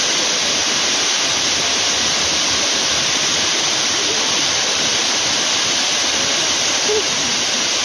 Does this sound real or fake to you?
fake